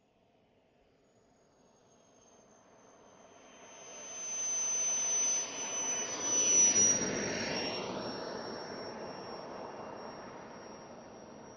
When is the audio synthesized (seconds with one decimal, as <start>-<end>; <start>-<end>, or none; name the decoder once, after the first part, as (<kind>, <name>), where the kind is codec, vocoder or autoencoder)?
none